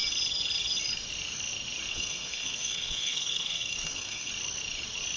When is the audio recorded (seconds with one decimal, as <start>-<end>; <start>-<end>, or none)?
0.0-1.9; 4.3-5.2